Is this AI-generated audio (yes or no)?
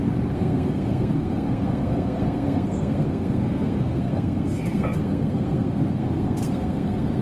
yes